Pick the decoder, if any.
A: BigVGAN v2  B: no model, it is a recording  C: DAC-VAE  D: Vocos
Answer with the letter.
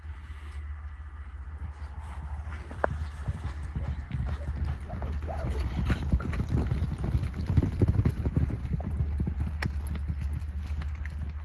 B